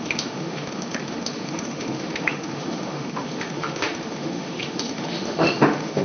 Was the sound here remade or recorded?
remade